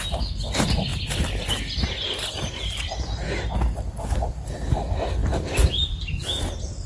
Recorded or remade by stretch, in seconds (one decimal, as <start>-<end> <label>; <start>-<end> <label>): 0.0-6.9 recorded